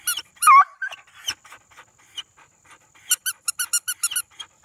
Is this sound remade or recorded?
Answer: recorded